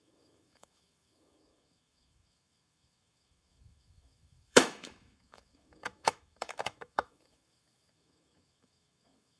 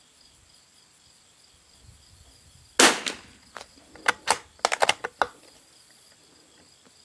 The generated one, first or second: first